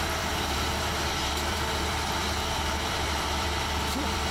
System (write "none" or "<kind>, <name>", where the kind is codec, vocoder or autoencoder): vocoder, BigVGAN v2